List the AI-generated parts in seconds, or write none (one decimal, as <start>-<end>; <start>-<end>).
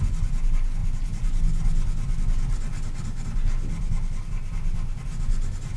none